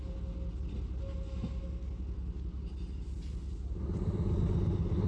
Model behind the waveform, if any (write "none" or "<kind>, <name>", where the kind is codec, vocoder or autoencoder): none